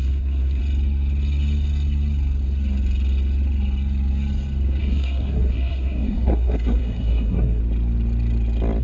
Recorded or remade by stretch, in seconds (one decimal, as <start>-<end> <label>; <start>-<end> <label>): 0.0-0.6 remade; 0.6-4.8 recorded; 4.8-7.6 remade; 7.6-8.8 recorded